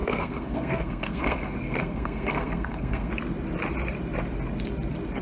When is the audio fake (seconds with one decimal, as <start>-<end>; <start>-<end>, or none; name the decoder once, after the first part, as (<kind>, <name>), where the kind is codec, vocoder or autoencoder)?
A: 0.0-3.1 (codec, SNAC)